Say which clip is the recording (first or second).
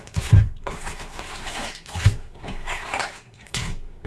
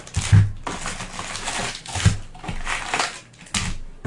second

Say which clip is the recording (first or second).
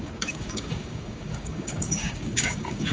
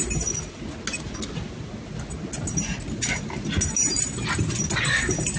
second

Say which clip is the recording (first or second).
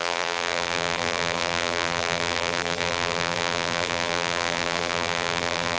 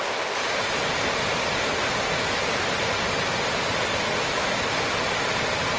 second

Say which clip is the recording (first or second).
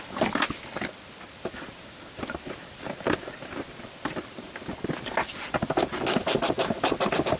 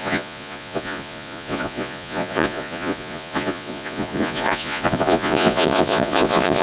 first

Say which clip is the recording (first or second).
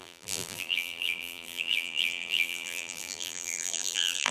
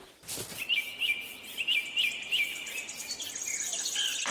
second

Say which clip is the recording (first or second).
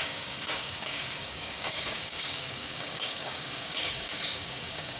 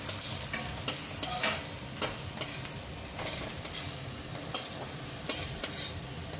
second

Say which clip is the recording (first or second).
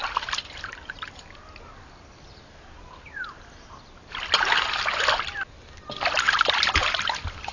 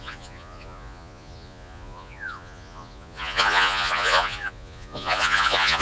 first